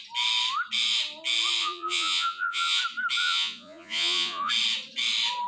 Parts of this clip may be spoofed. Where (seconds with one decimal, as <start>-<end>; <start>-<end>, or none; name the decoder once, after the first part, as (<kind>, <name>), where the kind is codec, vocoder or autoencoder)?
1.6-2.8 (vocoder, Vocos); 3.2-4.5